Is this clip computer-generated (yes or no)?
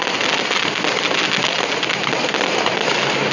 no